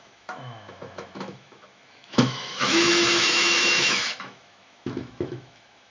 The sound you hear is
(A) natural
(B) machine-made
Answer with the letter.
B